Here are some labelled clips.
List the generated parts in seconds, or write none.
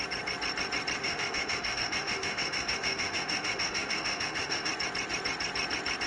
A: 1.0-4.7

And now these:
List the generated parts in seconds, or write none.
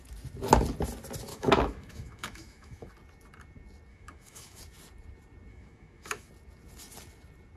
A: 1.3-2.9; 3.9-4.6; 5.5-6.3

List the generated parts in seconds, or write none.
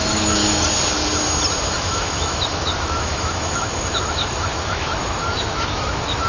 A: 0.0-0.4; 1.6-6.3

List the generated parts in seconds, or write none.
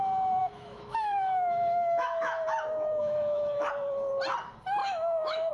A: 0.4-3.7; 4.8-5.5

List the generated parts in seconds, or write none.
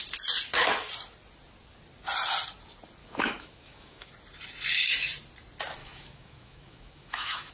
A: 3.0-4.1; 5.8-7.5